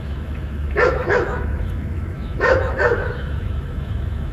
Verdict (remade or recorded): remade